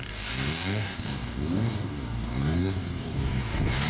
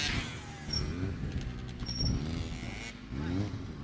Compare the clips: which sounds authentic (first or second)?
second